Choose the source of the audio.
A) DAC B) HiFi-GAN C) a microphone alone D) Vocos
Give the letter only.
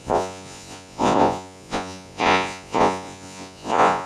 D